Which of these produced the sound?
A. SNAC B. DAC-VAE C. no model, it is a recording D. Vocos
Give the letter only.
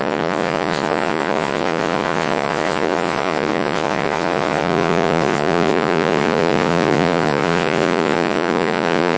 D